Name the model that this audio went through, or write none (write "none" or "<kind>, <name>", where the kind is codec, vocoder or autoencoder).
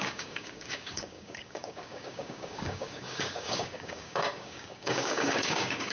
codec, DAC